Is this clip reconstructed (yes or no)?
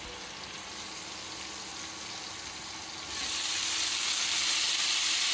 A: no